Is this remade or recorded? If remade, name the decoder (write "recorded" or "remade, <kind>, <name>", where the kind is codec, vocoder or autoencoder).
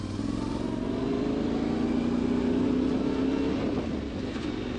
recorded